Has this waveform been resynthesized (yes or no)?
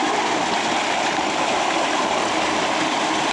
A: no